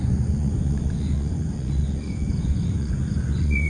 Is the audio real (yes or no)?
no